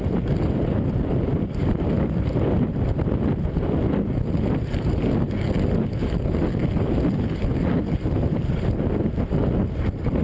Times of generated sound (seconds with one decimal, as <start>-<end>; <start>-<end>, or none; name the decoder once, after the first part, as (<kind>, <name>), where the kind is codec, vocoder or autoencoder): none